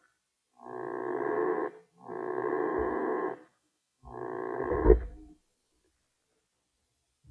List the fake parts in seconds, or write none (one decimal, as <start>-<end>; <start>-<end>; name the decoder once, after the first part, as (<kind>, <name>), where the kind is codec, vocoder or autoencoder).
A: 3.5-4.6 (autoencoder, DAC-VAE)